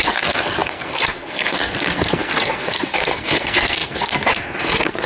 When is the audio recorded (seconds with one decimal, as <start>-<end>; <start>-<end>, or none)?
none